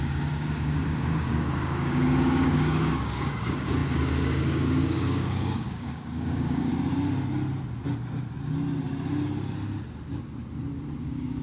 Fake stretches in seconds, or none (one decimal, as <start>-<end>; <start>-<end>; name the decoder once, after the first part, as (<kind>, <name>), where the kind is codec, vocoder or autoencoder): 0.0-6.7 (codec, DAC); 11.0-11.4